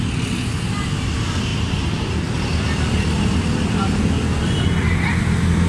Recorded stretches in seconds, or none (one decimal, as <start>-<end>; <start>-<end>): 0.0-1.5; 2.1-5.7